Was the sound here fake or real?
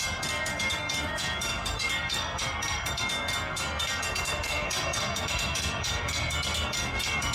fake